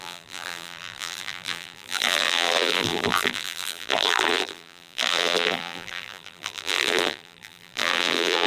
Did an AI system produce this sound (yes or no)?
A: yes